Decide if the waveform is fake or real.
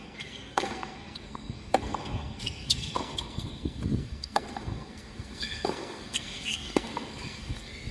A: fake